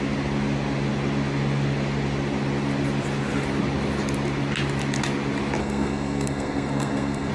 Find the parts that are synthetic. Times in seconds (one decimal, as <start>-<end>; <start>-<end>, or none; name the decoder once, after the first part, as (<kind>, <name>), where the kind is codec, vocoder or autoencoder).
5.6-7.3 (codec, SNAC)